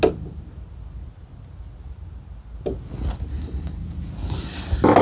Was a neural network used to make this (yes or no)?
no